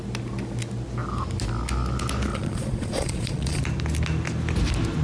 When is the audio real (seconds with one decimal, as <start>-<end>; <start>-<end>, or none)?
0.0-2.3; 3.6-5.0